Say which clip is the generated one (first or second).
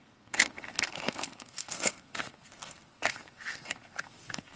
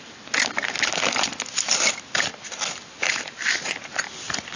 first